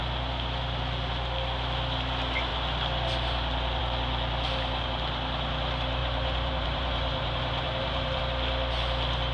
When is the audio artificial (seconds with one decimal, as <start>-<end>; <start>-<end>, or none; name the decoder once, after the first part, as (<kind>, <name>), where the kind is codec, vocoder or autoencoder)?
6.0-8.2 (vocoder, BigVGAN v2)